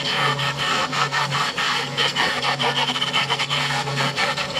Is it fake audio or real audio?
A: fake